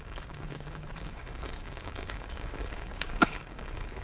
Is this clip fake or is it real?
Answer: fake